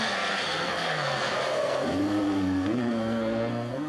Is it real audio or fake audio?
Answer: fake